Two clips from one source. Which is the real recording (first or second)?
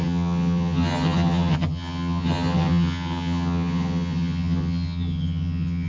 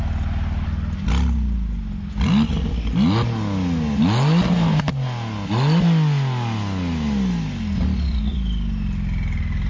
second